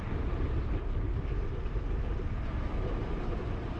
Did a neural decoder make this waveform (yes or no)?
no